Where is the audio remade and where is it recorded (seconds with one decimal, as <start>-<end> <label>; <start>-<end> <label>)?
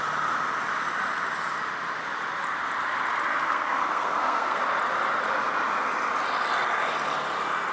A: 0.0-3.3 recorded; 3.3-4.6 remade; 4.6-7.7 recorded